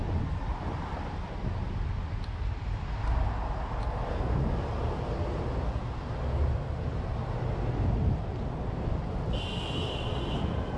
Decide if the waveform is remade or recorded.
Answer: recorded